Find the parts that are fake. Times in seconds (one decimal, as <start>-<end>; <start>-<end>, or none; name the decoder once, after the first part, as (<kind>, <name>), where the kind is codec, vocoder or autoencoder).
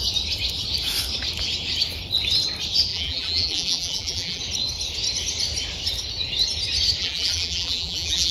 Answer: 2.9-4.4 (vocoder, BigVGAN v2); 7.0-8.3